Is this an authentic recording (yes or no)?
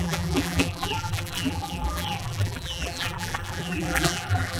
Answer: no